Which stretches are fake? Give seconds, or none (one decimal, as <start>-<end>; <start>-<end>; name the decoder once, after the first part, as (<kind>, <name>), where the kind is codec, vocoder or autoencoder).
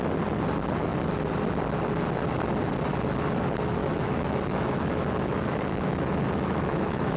3.8-7.2 (autoencoder, DAC-VAE)